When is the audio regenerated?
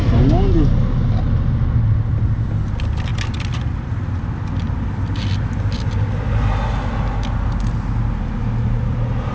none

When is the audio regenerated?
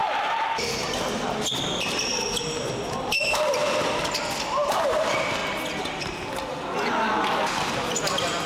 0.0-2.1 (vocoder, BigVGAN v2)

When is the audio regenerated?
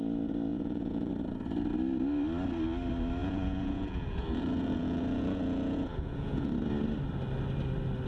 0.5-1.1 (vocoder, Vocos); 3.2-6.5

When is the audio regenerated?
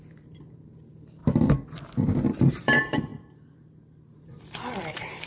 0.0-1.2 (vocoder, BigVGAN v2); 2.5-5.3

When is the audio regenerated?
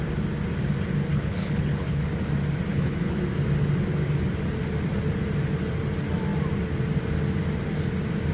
1.1-2.0 (codec, HILCodec); 2.7-3.2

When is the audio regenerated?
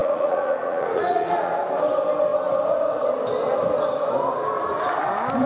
0.0-1.5 (vocoder, Vocos)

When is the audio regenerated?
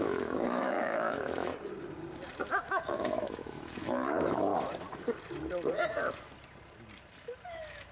0.0-1.5 (autoencoder, DAC-VAE); 2.5-4.5; 7.5-7.9